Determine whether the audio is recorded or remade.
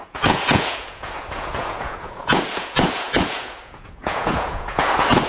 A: remade